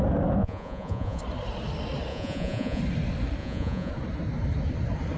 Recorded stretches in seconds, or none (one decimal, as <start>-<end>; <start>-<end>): 0.0-0.4; 1.2-2.1; 2.8-3.4; 3.9-5.2